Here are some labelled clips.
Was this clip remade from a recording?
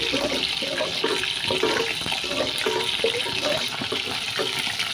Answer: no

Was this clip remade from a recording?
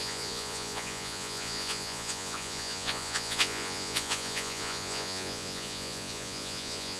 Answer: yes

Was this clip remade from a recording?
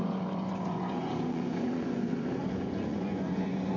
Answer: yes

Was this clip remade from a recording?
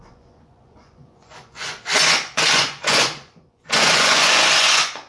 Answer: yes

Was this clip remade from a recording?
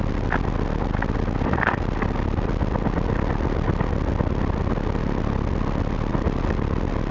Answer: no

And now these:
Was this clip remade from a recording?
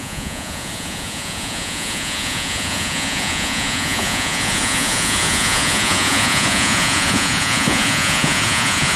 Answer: yes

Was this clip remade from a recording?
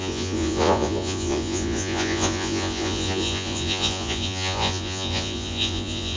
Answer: yes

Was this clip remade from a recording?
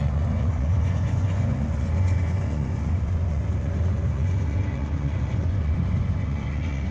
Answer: yes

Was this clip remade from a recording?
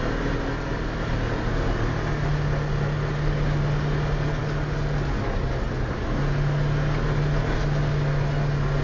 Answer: no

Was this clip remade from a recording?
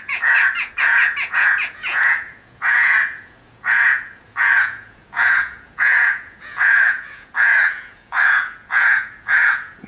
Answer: yes